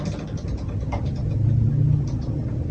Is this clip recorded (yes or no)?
yes